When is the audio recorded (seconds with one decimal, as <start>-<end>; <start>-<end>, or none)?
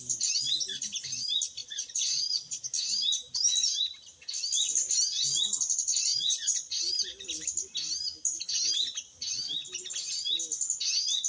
0.0-1.6; 2.6-6.1; 6.8-11.3